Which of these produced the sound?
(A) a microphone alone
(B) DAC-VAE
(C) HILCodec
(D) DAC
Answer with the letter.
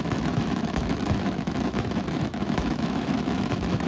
B